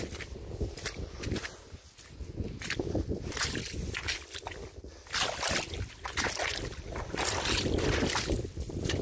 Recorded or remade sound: recorded